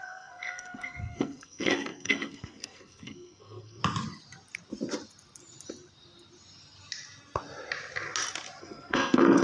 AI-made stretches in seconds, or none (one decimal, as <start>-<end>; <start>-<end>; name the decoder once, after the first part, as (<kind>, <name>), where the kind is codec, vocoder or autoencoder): 0.0-3.8 (codec, SNAC); 8.6-9.4